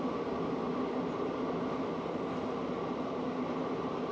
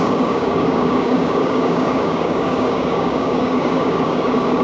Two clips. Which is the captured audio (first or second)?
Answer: first